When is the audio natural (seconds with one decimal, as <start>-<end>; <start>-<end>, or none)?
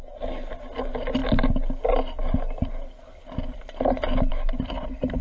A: 0.0-5.2